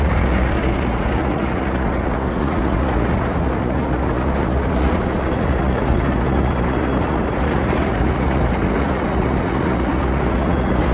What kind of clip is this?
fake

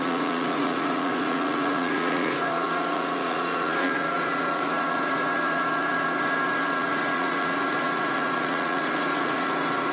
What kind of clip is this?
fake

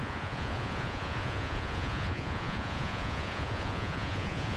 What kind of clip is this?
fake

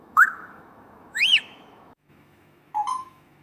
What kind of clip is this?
fake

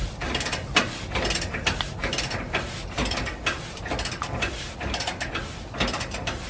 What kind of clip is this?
real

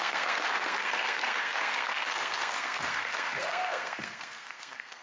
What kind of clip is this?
fake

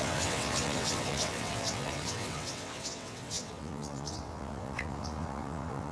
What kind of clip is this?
fake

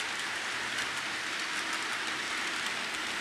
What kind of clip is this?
real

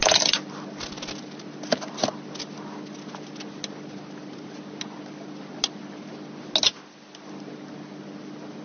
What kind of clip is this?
real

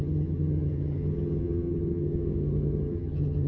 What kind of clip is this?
fake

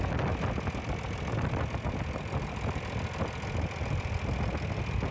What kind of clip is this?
real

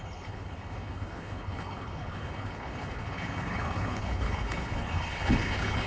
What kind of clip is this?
fake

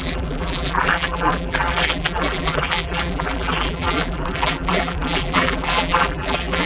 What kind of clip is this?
fake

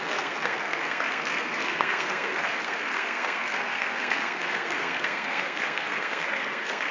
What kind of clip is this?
fake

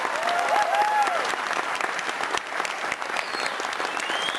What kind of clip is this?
real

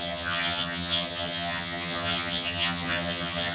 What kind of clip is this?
fake